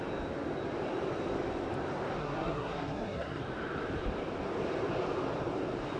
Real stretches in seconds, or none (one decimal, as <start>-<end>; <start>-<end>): 0.0-2.2; 3.4-6.0